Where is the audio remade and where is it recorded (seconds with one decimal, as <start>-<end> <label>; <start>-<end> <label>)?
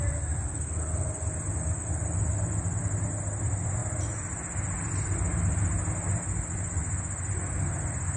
0.0-8.2 recorded